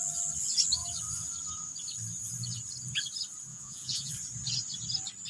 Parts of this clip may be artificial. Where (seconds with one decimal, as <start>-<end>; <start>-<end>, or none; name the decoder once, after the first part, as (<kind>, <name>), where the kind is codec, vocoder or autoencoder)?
3.5-4.1 (vocoder, Vocos)